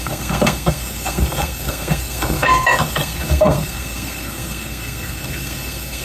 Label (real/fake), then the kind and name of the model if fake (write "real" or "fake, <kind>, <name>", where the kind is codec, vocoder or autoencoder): fake, codec, SNAC